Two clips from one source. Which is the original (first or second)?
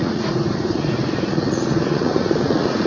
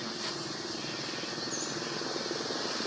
second